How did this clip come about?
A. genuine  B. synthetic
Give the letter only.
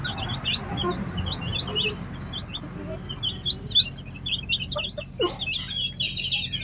A